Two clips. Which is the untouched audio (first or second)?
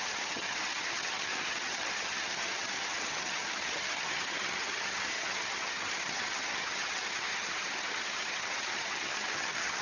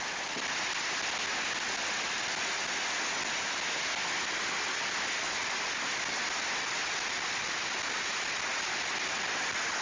second